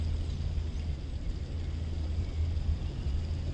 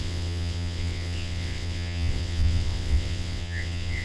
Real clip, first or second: first